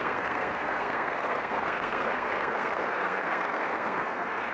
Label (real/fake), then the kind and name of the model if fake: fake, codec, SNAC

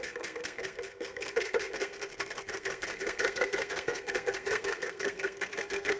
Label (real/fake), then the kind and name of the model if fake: fake, codec, SNAC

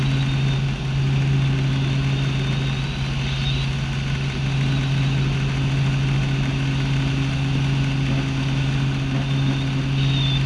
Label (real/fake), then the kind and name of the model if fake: real